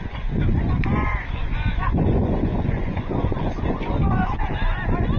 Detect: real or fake fake